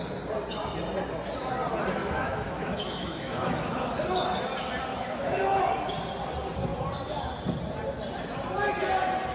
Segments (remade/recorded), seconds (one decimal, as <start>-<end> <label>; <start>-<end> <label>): 0.0-2.0 recorded; 2.0-3.9 remade; 3.9-4.9 recorded; 4.9-5.7 remade; 5.7-9.3 recorded